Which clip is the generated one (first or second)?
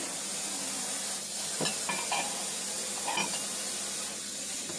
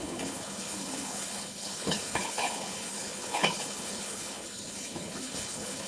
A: second